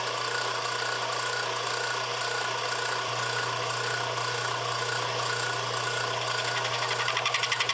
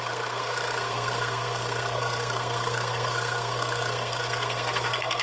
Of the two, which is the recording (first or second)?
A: first